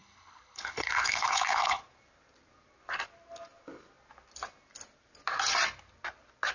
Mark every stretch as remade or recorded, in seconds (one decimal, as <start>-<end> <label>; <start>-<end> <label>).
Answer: 0.0-1.8 remade; 1.8-6.5 recorded